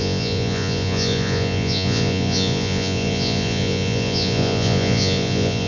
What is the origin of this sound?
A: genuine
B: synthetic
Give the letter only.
B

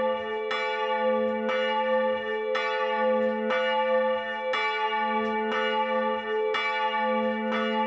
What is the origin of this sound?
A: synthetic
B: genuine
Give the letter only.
B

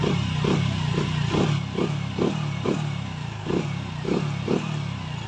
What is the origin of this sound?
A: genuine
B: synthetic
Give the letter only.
A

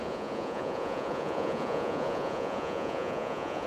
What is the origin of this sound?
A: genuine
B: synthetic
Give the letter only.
B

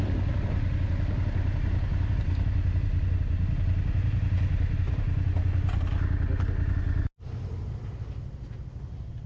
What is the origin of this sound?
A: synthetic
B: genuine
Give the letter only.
B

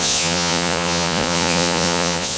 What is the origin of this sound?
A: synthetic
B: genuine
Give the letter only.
A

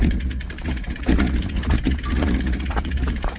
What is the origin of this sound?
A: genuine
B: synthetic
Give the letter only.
B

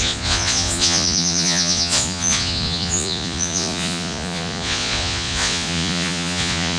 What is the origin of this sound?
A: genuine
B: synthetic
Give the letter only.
B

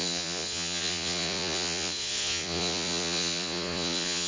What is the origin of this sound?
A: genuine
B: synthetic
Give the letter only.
B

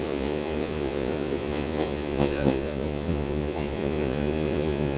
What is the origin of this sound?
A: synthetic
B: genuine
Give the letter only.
A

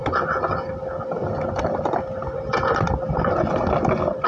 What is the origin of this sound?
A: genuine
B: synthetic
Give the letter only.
A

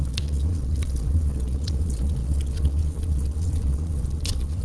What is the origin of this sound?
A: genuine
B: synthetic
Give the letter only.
B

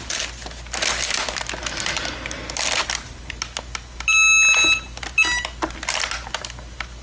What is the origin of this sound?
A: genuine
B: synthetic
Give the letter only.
A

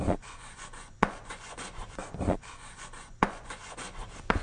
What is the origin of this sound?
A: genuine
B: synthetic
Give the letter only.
B